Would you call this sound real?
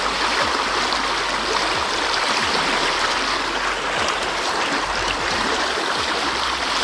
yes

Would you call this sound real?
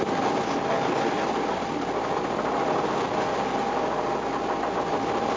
yes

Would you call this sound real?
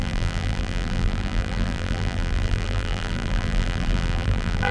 no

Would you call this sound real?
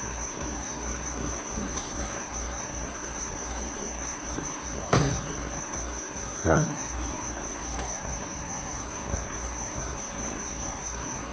no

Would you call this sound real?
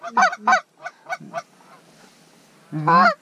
yes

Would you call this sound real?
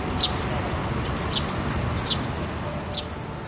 yes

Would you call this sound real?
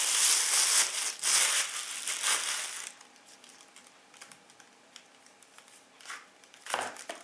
yes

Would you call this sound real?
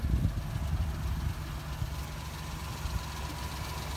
yes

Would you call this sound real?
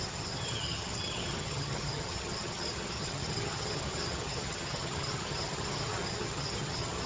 no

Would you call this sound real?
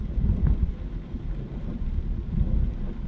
no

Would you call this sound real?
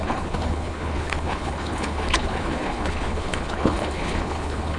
no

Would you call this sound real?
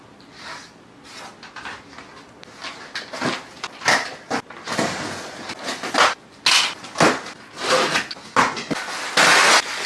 yes